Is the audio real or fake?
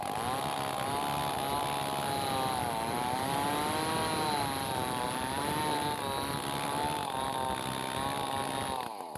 real